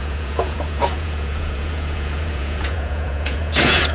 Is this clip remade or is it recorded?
remade